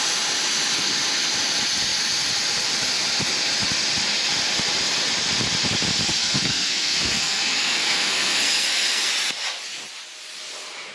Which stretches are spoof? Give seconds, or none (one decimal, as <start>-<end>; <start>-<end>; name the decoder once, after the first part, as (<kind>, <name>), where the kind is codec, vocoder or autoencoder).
6.2-9.1 (codec, SNAC)

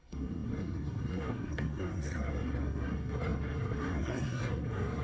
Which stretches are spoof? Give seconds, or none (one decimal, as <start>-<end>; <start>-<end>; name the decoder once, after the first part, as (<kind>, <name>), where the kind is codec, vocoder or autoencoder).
0.0-5.0 (codec, SNAC)

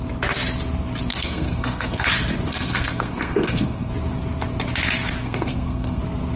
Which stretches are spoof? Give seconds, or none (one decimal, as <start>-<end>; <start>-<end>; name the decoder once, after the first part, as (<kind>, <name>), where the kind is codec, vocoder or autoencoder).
1.1-2.1 (codec, SNAC); 2.5-3.9; 5.2-6.0

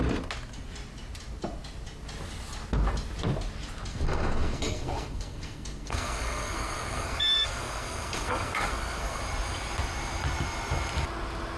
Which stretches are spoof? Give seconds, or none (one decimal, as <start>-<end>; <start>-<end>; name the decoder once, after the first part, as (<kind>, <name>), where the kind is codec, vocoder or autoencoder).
3.9-9.2 (codec, SNAC)

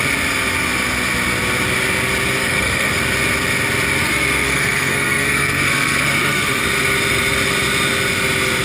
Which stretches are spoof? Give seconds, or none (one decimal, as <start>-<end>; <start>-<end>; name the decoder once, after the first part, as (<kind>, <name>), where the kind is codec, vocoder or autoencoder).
2.4-2.9 (codec, SNAC); 4.0-6.6

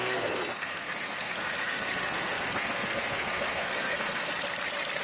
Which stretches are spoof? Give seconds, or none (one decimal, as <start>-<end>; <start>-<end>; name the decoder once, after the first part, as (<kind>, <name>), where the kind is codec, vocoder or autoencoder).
0.0-4.3 (codec, SNAC)

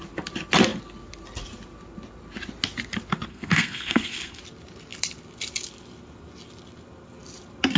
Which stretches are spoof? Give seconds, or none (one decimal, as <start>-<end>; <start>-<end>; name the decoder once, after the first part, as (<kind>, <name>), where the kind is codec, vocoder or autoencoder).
3.3-4.4 (codec, SNAC)

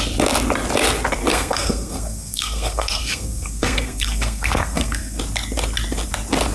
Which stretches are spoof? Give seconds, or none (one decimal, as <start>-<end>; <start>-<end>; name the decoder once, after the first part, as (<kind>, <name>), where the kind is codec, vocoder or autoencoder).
1.3-5.2 (codec, SNAC)